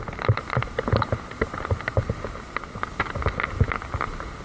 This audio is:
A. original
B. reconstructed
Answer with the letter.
A